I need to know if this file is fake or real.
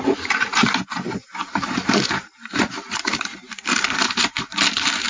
fake